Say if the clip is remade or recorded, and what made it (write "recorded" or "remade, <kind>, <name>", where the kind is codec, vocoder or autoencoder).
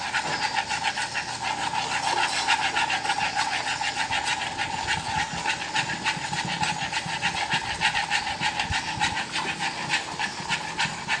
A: recorded